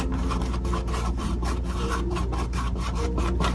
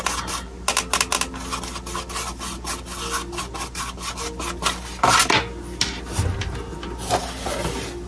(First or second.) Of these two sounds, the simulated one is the first